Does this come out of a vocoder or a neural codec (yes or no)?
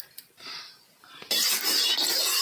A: no